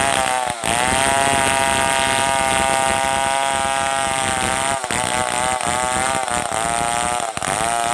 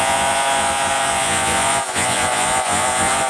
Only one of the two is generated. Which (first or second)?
second